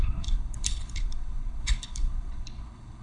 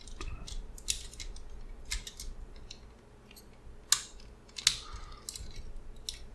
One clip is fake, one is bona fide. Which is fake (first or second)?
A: first